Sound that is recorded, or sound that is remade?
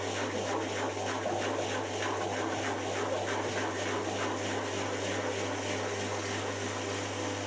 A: recorded